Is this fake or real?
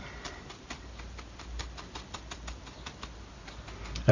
real